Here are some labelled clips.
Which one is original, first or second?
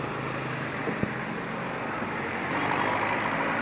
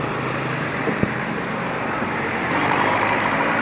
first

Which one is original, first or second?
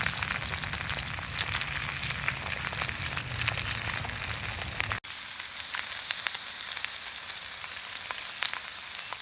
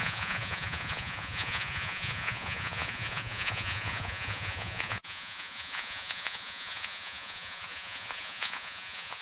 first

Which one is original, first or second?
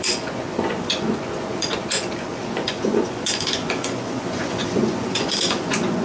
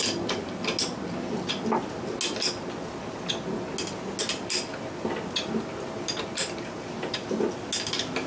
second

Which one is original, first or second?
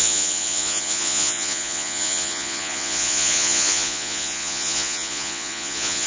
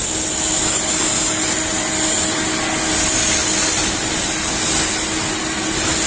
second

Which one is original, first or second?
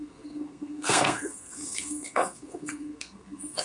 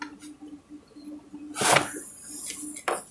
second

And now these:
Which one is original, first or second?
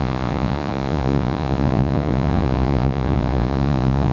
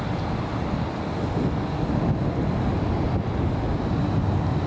second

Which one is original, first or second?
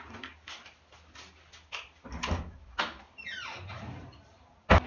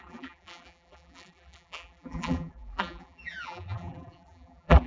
first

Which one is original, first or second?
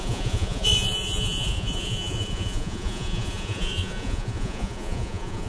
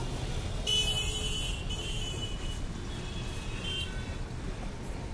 second